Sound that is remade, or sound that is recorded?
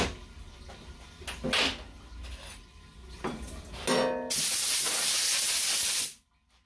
recorded